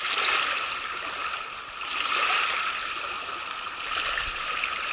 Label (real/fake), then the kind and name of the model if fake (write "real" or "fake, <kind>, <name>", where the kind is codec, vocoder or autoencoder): real